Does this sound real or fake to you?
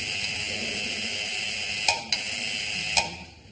real